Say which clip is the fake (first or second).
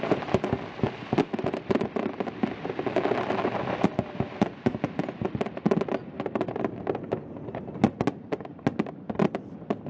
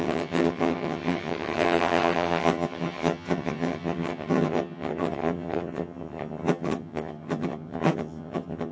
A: second